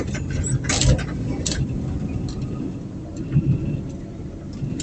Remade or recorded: remade